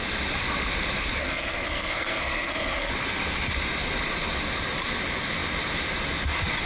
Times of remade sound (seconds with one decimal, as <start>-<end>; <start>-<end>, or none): 1.2-2.9

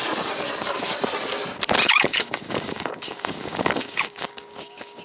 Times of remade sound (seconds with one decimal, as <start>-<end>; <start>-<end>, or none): 1.8-5.0

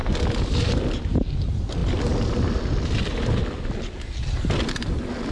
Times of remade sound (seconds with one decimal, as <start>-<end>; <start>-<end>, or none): none

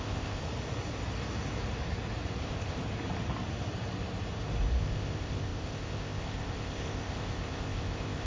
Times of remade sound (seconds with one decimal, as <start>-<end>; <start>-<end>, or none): 0.0-0.4; 2.4-2.8; 4.8-8.3

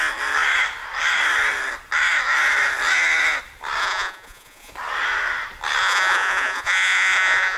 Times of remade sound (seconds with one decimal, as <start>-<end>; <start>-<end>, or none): 3.8-4.7; 5.8-7.6

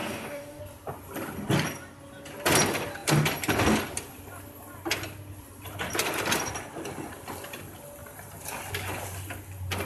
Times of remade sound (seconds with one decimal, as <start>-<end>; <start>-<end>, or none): 0.0-0.6

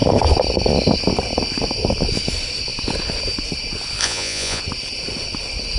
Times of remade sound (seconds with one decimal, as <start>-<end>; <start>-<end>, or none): 4.0-4.6